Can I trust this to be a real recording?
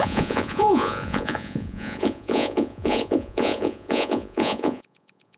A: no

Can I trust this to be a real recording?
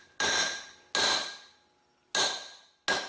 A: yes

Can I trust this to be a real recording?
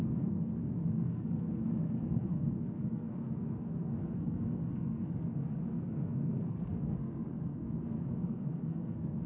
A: no